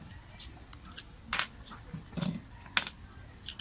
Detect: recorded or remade recorded